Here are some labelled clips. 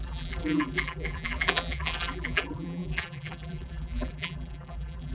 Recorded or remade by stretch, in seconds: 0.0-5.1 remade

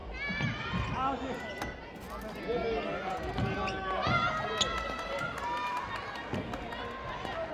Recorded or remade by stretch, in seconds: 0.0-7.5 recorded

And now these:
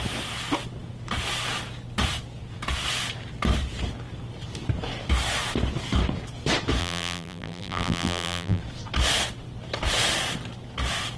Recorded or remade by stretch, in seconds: 0.0-6.8 recorded; 6.8-8.6 remade; 8.6-11.2 recorded